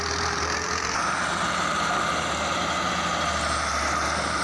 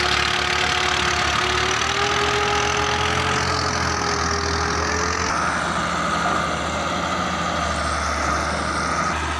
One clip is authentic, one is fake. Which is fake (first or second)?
first